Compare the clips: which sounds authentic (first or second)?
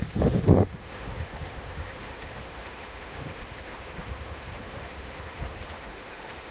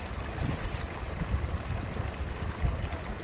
second